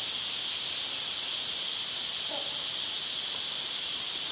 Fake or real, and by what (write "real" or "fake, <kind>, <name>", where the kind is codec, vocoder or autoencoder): real